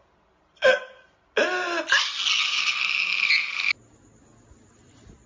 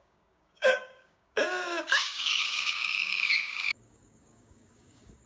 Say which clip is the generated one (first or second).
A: second